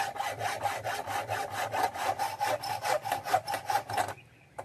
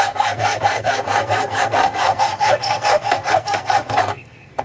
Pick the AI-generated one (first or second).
second